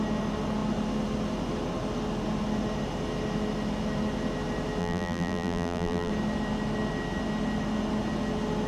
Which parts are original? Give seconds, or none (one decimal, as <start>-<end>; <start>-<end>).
0.0-4.8; 6.1-8.7